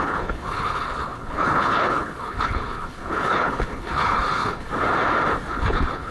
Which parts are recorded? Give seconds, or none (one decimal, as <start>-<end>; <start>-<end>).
4.7-5.5